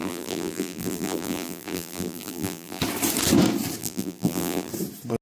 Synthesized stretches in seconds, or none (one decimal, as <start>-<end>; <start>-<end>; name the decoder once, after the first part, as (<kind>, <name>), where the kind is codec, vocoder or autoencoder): 0.0-2.8 (vocoder, BigVGAN v2); 3.8-4.7